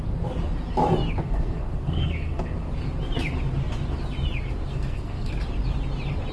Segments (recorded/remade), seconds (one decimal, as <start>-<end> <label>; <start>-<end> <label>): 0.0-1.2 recorded; 1.2-2.7 remade; 2.7-4.7 recorded; 4.7-5.3 remade; 5.3-6.3 recorded